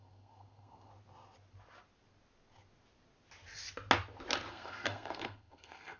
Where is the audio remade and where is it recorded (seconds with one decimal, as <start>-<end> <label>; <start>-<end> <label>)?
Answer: 0.0-0.9 remade; 0.9-4.5 recorded; 4.5-6.0 remade